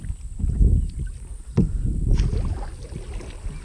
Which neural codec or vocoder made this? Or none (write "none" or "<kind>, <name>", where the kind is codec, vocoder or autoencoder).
none